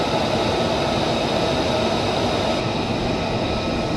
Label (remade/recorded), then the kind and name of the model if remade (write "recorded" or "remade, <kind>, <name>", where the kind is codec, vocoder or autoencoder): recorded